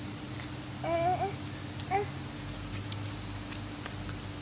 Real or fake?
real